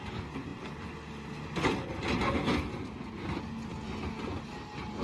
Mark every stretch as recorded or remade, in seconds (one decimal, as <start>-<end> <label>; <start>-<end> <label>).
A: 0.0-5.0 recorded